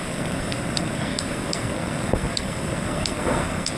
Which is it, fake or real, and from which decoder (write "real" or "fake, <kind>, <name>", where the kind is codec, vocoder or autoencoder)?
fake, codec, SNAC